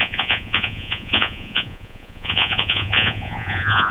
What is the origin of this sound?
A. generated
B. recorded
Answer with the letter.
A